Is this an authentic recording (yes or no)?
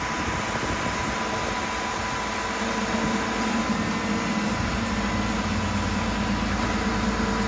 yes